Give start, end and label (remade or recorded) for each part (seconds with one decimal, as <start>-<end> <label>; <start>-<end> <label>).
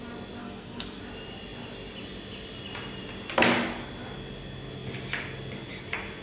0.0-0.4 recorded; 0.4-1.0 remade; 1.0-6.2 recorded